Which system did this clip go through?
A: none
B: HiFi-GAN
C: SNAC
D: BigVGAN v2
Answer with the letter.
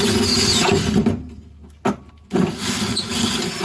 A